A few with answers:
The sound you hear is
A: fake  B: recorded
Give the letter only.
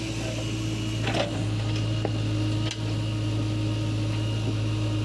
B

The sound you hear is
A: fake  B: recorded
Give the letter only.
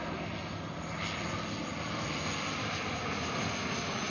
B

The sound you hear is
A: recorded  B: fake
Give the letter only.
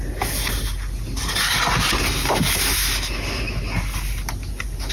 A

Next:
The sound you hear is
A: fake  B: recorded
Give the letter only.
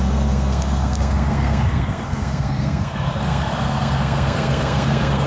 A